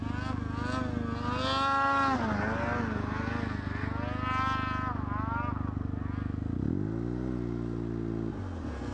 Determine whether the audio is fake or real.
real